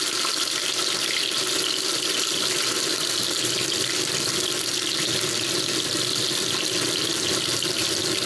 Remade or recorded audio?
recorded